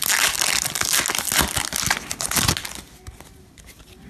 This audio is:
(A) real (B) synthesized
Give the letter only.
A